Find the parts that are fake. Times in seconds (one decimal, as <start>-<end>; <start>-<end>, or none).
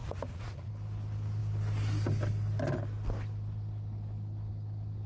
0.0-0.7